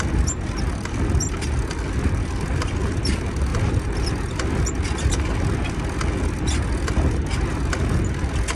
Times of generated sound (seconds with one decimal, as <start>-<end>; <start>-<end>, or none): 3.5-4.1